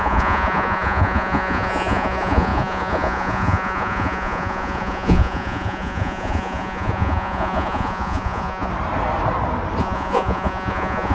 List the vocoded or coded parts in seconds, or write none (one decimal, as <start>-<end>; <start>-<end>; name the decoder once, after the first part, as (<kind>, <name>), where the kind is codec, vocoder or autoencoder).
0.0-8.7 (vocoder, Vocos); 9.8-11.1

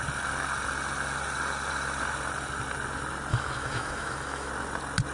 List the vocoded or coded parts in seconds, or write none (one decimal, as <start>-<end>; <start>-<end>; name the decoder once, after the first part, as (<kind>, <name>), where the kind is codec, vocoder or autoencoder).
3.3-4.5 (autoencoder, DAC-VAE)

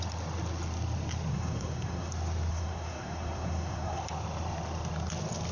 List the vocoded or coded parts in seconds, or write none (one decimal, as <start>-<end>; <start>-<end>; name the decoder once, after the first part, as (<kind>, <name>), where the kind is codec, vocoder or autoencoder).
1.3-2.1 (codec, SNAC); 2.5-4.0